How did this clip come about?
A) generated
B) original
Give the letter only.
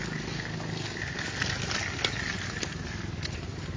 B